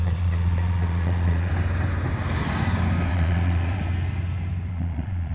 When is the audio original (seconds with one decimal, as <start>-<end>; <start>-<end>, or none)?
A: 1.5-3.1; 3.8-4.7